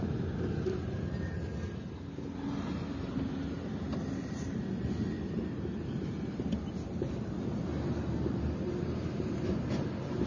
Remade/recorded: recorded